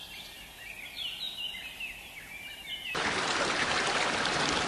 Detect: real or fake real